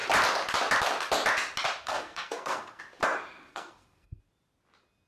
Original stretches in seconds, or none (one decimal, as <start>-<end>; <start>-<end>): 0.0-1.8; 2.8-3.5; 4.2-5.1